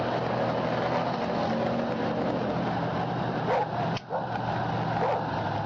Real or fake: real